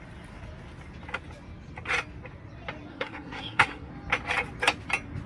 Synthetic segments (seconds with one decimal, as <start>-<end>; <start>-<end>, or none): 2.9-3.9